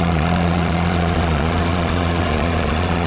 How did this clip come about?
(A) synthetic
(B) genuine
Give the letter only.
A